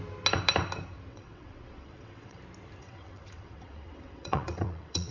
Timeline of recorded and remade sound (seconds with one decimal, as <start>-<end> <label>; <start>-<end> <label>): 0.0-1.1 recorded; 1.1-2.4 remade; 2.4-2.8 recorded; 2.8-5.1 remade